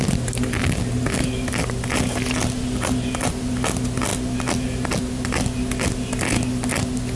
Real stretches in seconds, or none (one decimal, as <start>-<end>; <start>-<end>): 0.0-7.2